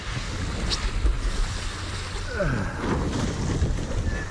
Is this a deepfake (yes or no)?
no